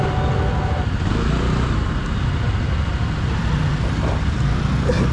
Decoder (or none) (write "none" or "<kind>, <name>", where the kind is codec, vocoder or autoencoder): none